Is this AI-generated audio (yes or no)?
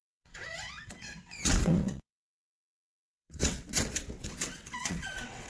yes